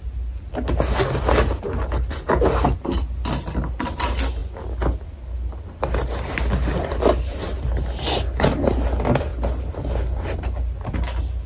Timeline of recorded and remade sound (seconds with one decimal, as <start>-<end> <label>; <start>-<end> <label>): 0.0-11.5 recorded

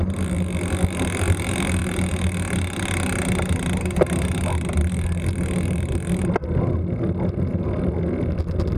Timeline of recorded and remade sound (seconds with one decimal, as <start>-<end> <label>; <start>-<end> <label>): 0.0-8.8 recorded

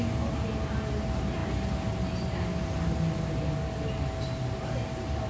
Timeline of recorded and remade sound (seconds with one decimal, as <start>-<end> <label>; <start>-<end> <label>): 0.0-5.3 recorded